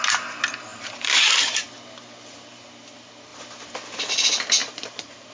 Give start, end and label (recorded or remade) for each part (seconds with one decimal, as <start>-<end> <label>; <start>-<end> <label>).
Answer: 0.0-0.7 recorded; 0.7-1.7 remade; 1.7-4.6 recorded; 4.6-5.3 remade